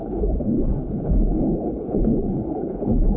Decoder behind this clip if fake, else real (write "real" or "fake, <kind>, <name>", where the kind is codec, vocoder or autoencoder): fake, codec, HILCodec